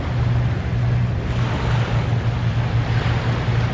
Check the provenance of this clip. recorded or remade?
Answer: recorded